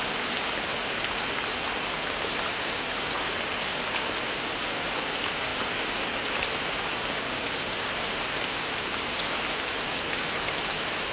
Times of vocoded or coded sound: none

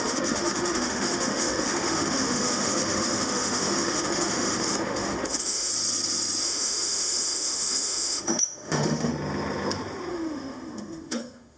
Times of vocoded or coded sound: 0.0-5.7 (autoencoder, DAC-VAE); 6.4-9.1; 10.1-11.6

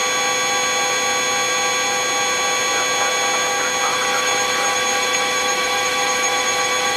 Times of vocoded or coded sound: 3.9-7.0 (autoencoder, DAC-VAE)